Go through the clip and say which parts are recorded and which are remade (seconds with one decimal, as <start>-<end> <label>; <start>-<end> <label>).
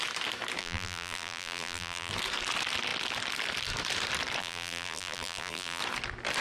0.0-0.6 recorded; 0.6-2.1 remade; 2.1-4.4 recorded; 4.4-5.8 remade; 5.8-6.4 recorded